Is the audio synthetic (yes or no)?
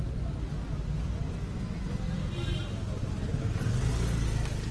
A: no